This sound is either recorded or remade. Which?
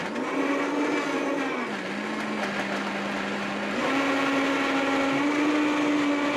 recorded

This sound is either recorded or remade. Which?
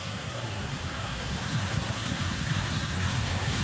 remade